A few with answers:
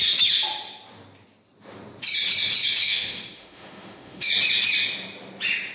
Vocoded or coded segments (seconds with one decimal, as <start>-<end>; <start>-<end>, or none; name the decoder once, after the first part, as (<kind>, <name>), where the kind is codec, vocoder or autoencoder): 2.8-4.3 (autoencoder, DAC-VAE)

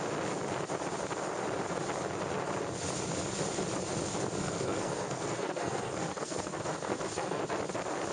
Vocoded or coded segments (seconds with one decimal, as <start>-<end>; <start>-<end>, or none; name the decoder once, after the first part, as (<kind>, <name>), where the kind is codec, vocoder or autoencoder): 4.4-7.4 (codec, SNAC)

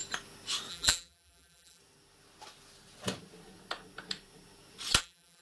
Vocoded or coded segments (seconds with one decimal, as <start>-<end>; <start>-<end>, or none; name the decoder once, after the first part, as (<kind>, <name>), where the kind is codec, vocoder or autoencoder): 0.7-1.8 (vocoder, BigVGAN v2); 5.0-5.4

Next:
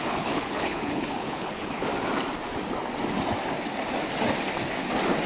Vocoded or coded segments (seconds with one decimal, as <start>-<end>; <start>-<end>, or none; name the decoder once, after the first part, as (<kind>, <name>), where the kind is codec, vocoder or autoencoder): 0.0-1.9 (codec, HILCodec)